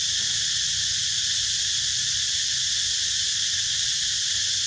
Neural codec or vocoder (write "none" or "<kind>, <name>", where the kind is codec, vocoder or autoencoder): none